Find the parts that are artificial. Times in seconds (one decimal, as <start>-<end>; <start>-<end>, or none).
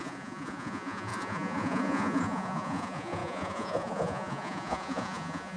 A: 0.0-5.6